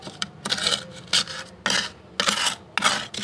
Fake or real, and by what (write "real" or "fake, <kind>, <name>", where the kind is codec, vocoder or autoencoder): real